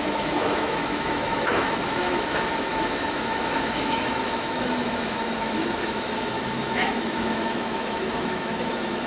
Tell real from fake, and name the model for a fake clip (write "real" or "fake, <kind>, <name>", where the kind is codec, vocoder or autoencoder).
fake, autoencoder, DAC-VAE